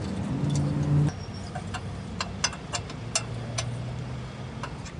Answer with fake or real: real